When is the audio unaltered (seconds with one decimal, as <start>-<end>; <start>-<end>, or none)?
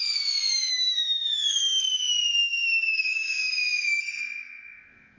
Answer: 0.0-0.7; 1.8-2.4; 3.5-5.2